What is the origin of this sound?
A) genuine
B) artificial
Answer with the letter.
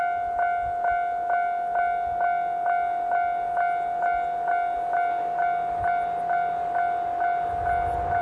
A